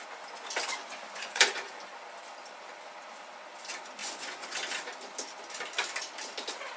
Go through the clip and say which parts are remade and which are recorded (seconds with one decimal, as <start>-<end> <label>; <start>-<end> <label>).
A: 0.0-0.8 recorded; 0.8-1.7 remade; 1.7-4.0 recorded; 4.0-4.5 remade; 4.5-6.8 recorded

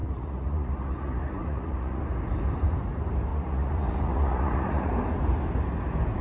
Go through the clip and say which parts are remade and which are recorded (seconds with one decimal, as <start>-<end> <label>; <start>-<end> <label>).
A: 0.0-2.0 remade; 2.0-3.3 recorded; 3.3-4.9 remade; 4.9-6.2 recorded

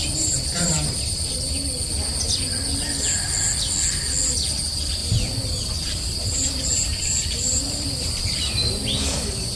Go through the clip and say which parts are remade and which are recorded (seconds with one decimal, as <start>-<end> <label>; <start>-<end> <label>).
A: 0.0-1.5 remade; 1.5-5.0 recorded; 5.0-8.5 remade; 8.5-9.6 recorded